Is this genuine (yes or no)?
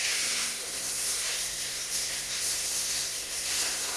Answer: no